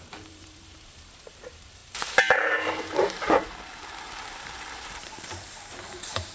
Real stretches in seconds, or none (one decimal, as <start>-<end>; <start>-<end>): none